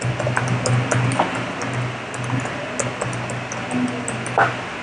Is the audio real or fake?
real